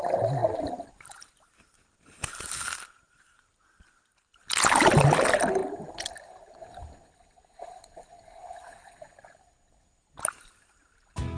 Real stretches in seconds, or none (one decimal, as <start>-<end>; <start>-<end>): 0.0-11.4

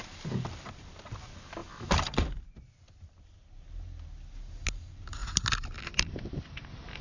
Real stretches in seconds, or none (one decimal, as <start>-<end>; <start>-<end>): 0.0-1.6; 2.4-7.0

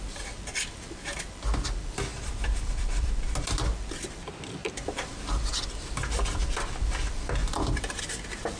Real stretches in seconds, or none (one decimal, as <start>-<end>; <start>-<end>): 0.0-0.5; 1.1-2.1; 3.1-4.6; 5.8-7.4; 8.0-8.6